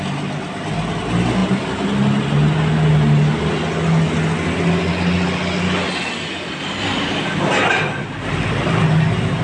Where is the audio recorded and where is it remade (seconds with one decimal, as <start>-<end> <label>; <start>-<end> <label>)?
0.0-9.4 recorded